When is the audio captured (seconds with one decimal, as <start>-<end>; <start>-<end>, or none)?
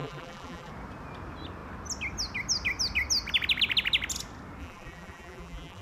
0.7-4.6